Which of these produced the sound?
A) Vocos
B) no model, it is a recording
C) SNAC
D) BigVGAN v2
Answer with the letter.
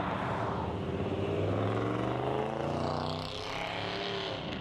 B